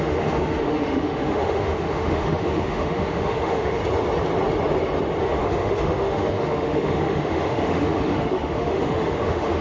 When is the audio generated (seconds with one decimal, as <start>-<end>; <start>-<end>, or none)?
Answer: 0.0-3.8; 5.2-9.6